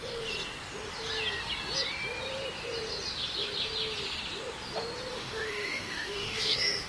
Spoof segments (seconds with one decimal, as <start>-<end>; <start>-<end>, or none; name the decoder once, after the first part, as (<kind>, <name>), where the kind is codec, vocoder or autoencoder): 5.1-6.9 (autoencoder, DAC-VAE)